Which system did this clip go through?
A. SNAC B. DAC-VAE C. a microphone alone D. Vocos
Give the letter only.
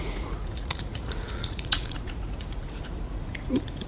D